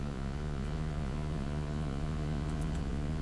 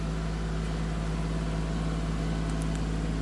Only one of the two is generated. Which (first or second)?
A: first